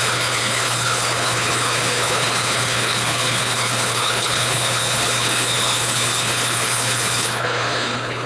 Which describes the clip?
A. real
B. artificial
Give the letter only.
B